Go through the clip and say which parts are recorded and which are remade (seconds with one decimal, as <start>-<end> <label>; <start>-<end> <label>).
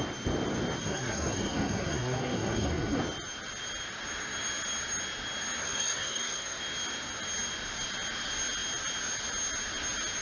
0.0-0.8 recorded; 0.8-3.0 remade; 3.0-5.6 recorded; 5.6-6.6 remade; 6.6-10.2 recorded